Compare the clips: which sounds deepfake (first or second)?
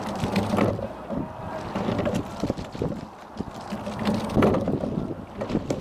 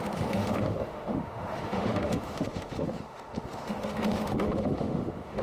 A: second